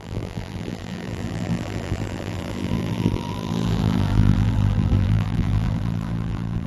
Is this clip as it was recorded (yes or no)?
no